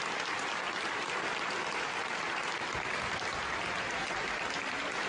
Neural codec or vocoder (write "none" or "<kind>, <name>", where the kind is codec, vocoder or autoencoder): none